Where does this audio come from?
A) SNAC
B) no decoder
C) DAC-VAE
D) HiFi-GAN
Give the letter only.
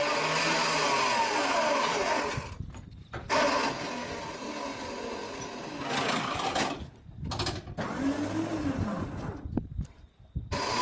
B